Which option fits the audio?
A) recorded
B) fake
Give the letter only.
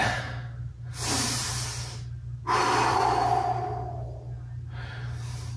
A